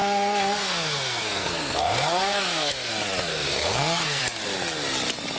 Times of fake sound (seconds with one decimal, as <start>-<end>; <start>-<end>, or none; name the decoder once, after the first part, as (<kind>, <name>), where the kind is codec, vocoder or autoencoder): 0.0-2.9 (codec, SNAC); 3.3-4.2